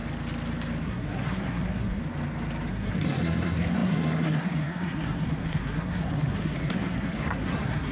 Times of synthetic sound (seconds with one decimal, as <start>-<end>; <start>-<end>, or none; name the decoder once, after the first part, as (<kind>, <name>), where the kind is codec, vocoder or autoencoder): 0.8-2.0 (codec, SNAC); 2.7-7.9